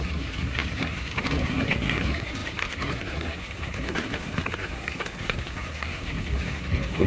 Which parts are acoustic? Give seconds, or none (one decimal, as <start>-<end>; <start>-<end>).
none